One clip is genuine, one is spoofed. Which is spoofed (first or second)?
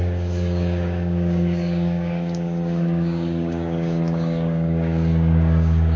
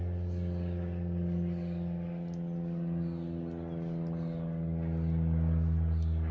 first